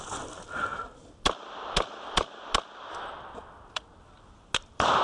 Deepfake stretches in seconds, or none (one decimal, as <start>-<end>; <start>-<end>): none

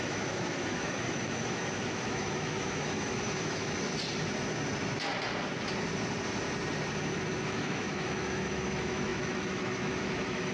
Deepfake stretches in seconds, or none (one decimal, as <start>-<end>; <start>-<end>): 0.0-3.9; 7.4-10.5

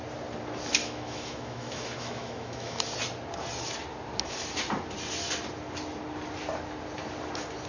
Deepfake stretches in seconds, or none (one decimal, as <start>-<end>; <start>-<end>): 0.8-2.8

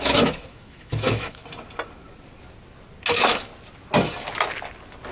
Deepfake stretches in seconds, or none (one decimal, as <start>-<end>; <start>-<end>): 0.0-1.4; 3.1-3.5

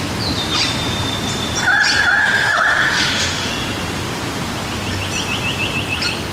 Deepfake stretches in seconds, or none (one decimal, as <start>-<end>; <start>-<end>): 2.2-3.5

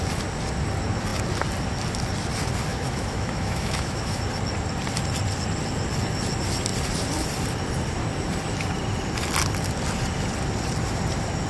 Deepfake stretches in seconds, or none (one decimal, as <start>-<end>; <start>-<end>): 2.7-4.2

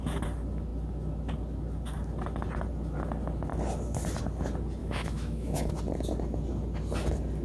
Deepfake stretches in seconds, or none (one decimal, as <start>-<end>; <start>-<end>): 4.8-5.7